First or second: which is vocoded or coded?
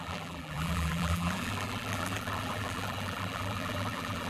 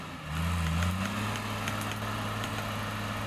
first